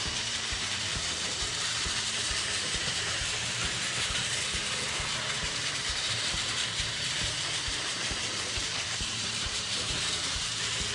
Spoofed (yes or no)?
yes